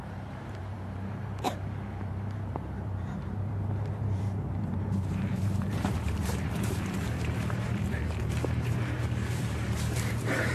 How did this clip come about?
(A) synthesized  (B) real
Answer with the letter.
A